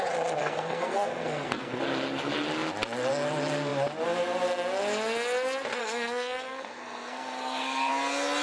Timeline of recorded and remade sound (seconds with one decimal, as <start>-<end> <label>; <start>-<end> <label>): 0.0-0.4 recorded; 0.4-1.8 remade; 1.8-5.8 recorded; 5.8-7.9 remade; 7.9-8.4 recorded